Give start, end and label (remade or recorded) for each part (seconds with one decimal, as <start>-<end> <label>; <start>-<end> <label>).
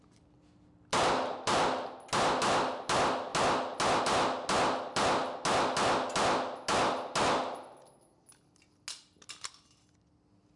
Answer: 0.0-10.6 recorded